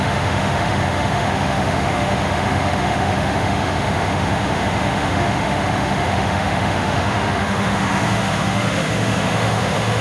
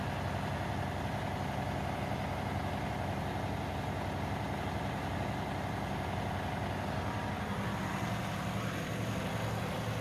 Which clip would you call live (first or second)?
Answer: second